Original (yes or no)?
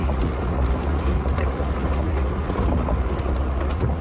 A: no